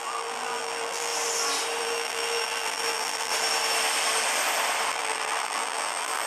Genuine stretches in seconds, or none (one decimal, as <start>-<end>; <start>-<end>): 1.1-1.8; 3.3-4.9